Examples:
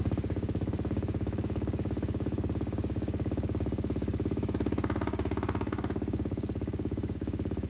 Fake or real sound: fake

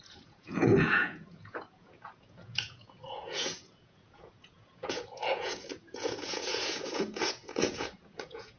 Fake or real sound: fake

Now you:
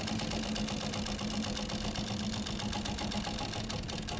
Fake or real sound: real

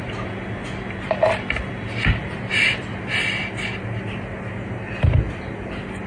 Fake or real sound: real